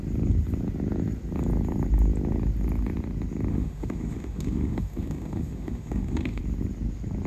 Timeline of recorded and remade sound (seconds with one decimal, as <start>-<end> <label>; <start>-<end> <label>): 0.0-3.5 recorded; 3.5-6.4 remade; 6.4-7.3 recorded